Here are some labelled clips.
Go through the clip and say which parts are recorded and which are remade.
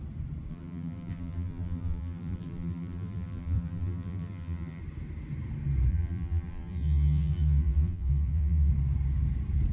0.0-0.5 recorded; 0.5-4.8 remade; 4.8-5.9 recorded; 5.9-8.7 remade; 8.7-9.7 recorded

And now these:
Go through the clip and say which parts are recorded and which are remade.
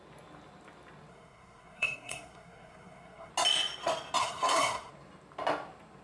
0.0-1.1 recorded; 1.1-3.3 remade; 3.3-4.2 recorded; 4.2-4.9 remade; 4.9-6.0 recorded